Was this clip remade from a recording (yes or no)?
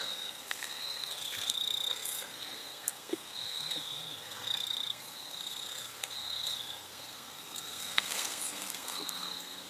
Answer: yes